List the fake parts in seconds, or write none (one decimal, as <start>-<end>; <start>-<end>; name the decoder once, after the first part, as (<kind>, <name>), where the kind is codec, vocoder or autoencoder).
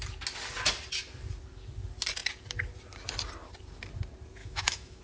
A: 4.4-5.0 (autoencoder, DAC-VAE)